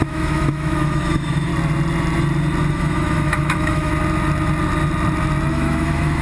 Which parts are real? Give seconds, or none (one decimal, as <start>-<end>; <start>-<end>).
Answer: 1.5-2.7; 3.9-5.5